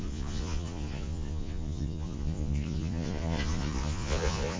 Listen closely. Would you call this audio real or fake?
fake